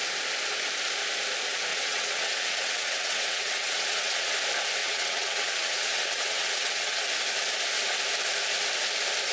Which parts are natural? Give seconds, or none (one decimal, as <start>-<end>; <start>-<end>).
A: 0.0-1.7; 4.3-4.8; 7.0-9.3